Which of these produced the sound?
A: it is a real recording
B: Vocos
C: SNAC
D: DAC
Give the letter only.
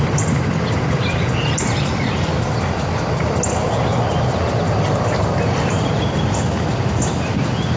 A